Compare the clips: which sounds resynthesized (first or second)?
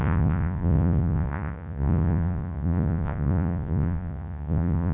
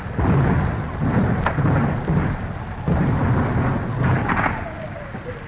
first